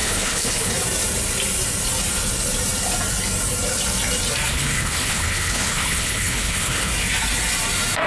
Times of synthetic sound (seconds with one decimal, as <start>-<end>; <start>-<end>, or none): 0.0-0.7; 4.5-6.9